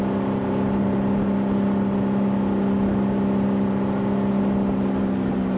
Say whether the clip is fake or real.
real